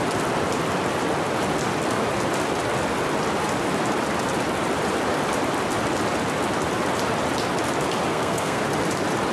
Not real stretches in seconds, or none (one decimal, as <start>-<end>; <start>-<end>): 8.1-8.6